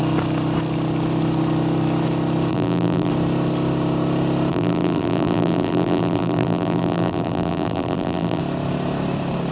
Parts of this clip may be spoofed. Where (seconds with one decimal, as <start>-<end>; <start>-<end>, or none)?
2.5-3.1; 4.5-8.4